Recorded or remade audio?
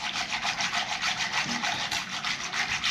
recorded